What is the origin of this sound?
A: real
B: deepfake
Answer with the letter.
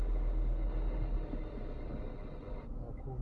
A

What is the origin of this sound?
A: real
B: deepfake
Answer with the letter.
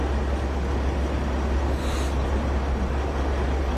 A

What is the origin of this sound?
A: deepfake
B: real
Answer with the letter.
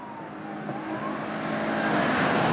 B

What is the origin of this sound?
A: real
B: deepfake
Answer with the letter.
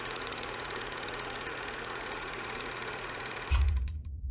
B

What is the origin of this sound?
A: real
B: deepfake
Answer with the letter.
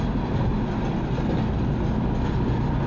A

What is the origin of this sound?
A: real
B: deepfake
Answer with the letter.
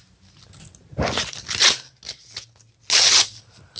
A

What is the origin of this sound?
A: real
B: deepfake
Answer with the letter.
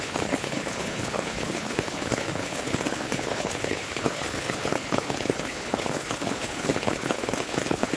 B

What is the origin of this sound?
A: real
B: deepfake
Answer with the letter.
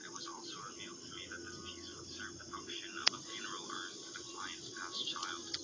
A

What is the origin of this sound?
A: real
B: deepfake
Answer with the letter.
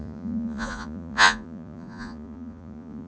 B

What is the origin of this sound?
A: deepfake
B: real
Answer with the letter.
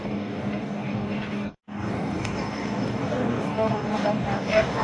A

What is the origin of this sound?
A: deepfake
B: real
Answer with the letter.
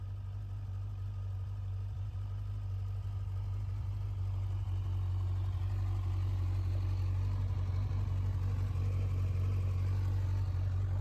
B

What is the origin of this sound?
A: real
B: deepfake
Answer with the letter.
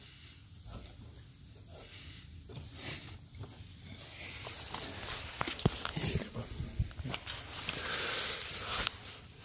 A